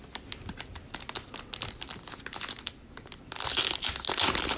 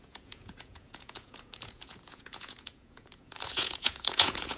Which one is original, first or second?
first